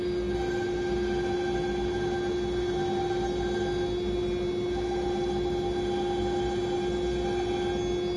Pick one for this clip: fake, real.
real